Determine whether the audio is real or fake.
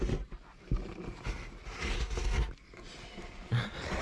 real